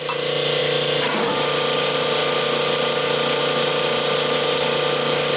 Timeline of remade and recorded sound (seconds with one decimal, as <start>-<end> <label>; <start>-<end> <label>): 0.0-5.4 recorded